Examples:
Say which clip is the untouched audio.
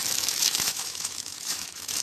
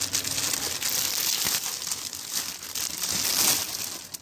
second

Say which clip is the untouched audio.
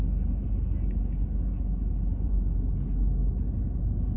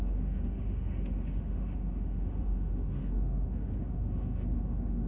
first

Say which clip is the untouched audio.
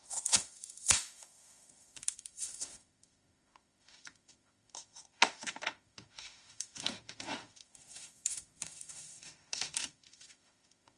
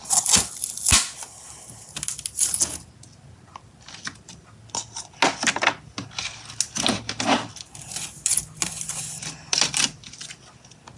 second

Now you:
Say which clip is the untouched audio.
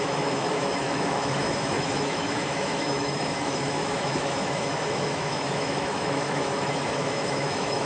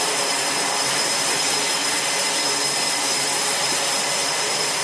second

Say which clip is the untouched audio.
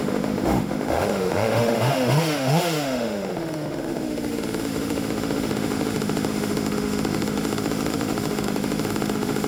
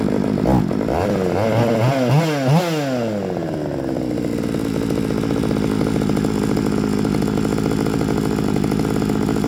second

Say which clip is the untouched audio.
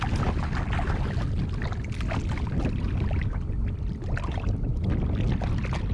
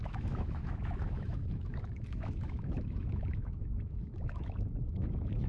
first